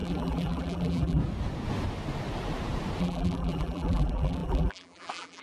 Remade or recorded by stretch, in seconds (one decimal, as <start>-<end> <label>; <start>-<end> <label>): 0.0-1.2 remade; 1.2-3.0 recorded; 3.0-5.4 remade